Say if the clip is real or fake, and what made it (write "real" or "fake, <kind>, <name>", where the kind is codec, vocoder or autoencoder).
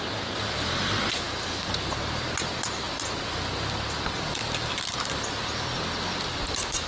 real